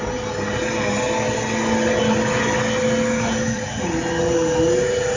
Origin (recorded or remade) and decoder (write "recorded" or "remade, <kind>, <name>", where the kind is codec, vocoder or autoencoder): recorded